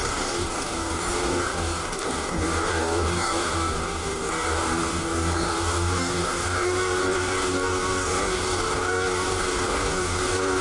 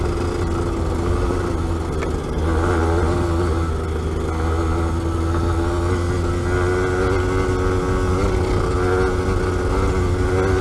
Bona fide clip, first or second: second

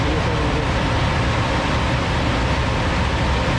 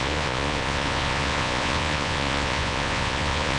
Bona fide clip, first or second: first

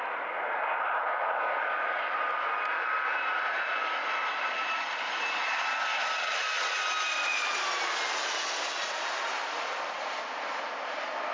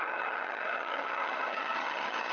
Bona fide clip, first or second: first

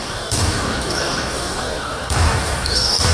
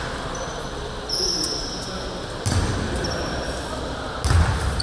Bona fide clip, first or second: second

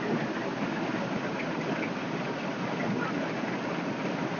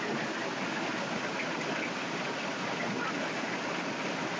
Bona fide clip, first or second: second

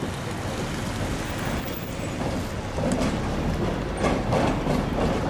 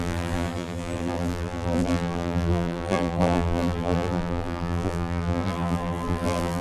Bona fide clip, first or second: first